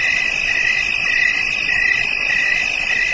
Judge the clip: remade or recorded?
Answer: recorded